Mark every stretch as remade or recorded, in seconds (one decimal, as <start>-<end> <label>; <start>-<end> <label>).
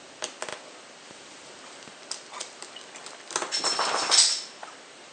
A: 0.0-5.1 recorded